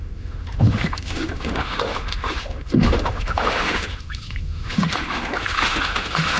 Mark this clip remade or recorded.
remade